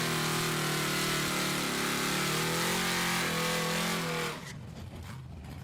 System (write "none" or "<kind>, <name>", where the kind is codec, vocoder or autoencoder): none